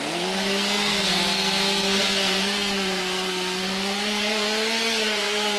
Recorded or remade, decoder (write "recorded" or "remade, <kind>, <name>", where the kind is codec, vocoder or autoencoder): remade, codec, SNAC